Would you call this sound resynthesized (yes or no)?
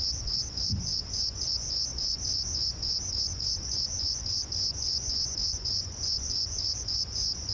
yes